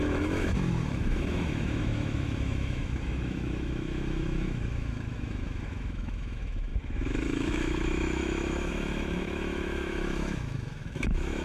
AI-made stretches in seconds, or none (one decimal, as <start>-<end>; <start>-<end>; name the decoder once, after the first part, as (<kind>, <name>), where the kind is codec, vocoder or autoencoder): 0.0-11.4 (autoencoder, DAC-VAE)